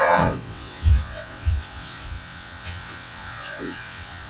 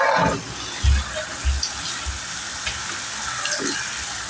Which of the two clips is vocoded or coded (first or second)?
first